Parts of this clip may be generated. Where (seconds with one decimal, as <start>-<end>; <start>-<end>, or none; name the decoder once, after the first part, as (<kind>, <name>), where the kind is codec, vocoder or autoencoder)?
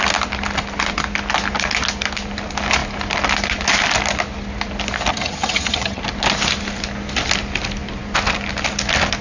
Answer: 5.1-6.0 (vocoder, HiFi-GAN)